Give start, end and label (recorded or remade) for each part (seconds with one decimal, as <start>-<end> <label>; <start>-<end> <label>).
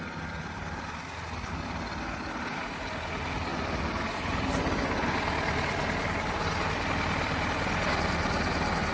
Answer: 0.0-8.9 recorded